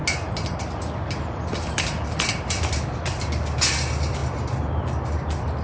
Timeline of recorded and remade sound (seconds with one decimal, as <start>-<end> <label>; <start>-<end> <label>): 0.0-5.6 recorded